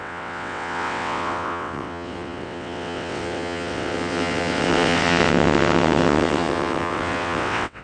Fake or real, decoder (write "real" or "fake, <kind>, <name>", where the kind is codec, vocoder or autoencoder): fake, vocoder, WaveNeXt